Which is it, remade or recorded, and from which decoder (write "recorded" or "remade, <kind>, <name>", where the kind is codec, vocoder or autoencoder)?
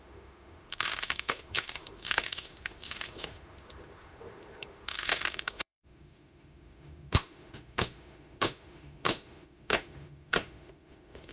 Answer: remade, autoencoder, DAC-VAE